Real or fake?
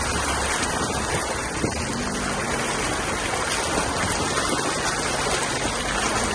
real